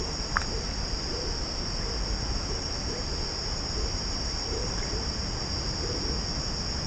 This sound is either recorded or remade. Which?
recorded